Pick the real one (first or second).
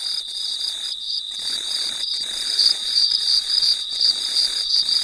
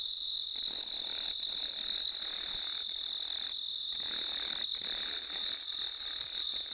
second